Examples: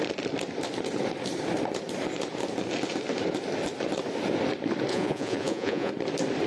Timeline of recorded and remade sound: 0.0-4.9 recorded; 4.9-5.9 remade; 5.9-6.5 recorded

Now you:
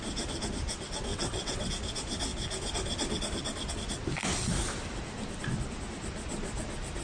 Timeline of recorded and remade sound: 0.0-1.1 recorded; 1.1-1.7 remade; 1.7-7.0 recorded